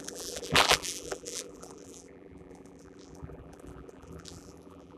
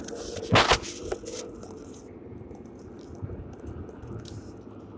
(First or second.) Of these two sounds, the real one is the second